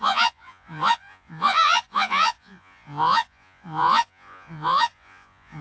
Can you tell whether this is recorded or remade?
remade